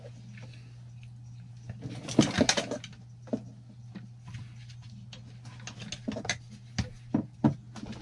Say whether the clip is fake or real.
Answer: real